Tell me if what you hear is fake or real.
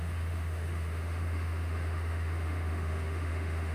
fake